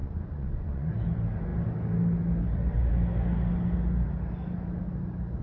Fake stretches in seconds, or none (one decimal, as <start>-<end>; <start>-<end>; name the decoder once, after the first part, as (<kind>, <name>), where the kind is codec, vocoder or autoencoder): 0.0-0.9 (vocoder, Vocos)